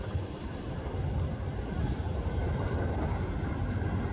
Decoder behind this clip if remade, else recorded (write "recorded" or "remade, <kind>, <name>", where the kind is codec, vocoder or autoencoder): recorded